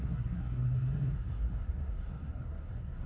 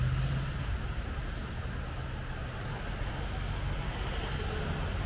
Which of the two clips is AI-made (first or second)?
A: first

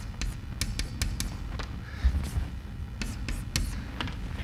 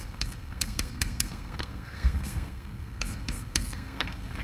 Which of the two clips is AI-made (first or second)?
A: second